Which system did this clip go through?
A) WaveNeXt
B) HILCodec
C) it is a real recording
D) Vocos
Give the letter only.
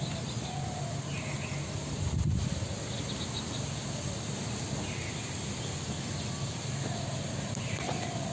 C